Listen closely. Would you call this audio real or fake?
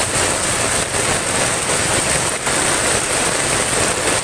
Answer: real